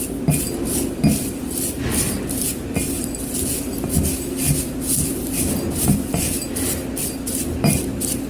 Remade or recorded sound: recorded